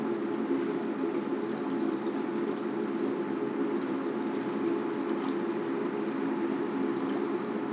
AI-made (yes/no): no